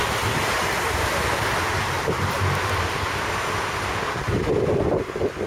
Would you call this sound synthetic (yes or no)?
no